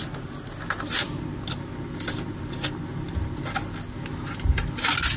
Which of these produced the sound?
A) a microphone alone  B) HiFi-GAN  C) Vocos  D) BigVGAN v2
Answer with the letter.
A